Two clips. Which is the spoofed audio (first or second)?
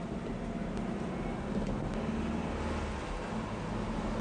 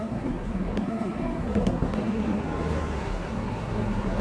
second